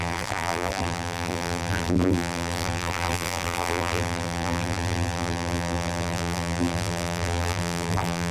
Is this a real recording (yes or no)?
no